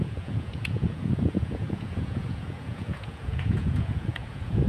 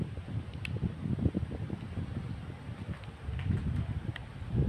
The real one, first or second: second